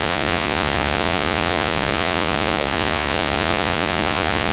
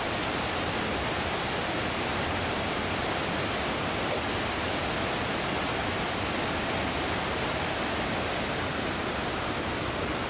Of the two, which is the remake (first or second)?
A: first